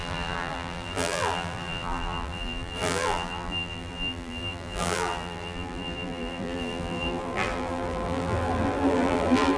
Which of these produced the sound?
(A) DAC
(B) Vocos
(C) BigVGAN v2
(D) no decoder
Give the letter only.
C